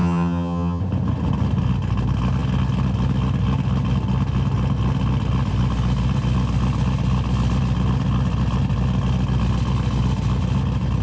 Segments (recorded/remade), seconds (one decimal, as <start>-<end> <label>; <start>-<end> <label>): 0.0-0.8 remade; 0.8-11.0 recorded